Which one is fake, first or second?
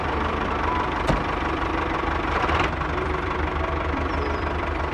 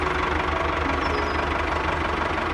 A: first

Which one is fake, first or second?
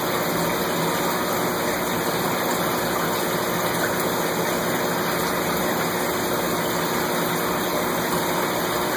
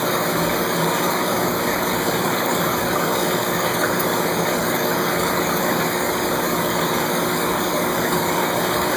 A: second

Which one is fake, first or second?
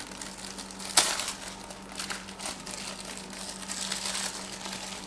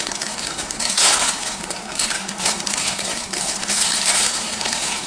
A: second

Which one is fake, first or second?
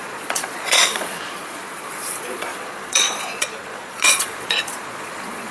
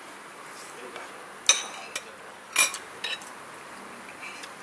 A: first